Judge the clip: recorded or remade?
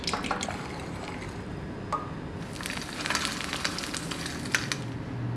recorded